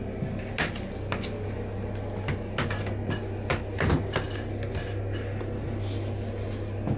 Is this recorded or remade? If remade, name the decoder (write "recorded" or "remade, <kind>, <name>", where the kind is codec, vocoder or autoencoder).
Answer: recorded